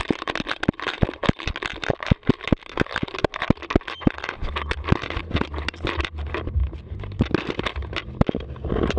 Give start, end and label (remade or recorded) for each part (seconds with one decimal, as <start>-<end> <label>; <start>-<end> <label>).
0.0-9.0 recorded